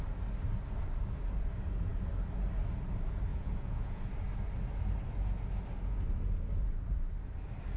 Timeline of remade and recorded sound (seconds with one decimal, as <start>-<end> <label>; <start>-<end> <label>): 0.0-3.3 recorded; 3.3-4.0 remade; 4.0-7.8 recorded